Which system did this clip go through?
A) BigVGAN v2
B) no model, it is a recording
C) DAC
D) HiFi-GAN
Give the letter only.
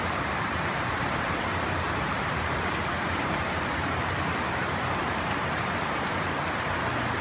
A